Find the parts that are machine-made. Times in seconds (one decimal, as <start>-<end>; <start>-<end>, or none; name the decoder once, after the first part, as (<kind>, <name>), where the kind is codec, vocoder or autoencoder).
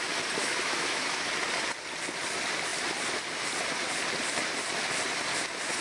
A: 0.4-1.3 (autoencoder, DAC-VAE)